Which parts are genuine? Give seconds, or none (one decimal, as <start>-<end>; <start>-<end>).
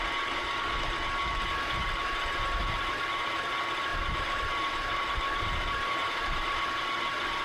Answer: 0.0-2.6; 3.5-3.9; 6.8-7.4